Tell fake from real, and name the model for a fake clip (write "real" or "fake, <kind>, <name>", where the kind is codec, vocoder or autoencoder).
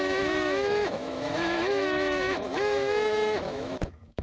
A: fake, autoencoder, DAC-VAE